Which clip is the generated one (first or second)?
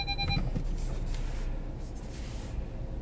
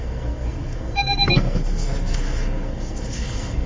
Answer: second